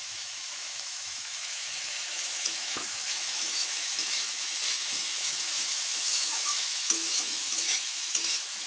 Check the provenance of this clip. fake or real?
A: fake